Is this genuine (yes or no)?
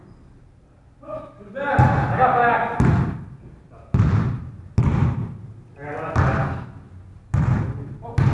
yes